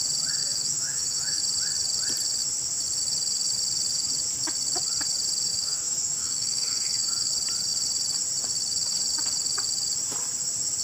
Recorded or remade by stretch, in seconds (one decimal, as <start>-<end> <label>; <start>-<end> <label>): 0.0-0.4 recorded; 0.4-1.4 remade; 1.4-5.5 recorded; 5.5-7.3 remade; 7.3-10.8 recorded